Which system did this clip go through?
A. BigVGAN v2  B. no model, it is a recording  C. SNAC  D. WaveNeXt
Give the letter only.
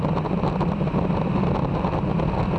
B